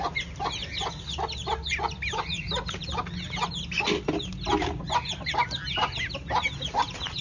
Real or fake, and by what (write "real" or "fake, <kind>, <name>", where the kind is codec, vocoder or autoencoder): real